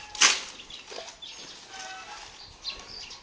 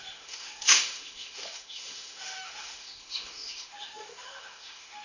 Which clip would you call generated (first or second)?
second